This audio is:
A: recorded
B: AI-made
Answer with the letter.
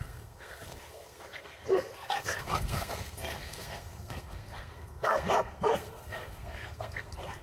B